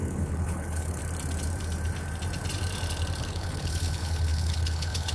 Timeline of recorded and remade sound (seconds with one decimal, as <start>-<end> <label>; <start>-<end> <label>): 0.0-1.0 remade; 1.0-3.2 recorded; 3.2-5.1 remade